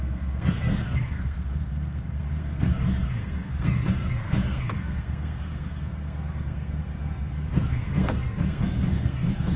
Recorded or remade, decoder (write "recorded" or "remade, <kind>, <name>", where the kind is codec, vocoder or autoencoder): remade, codec, SNAC